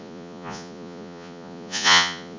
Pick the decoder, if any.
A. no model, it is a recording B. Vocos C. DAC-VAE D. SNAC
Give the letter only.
B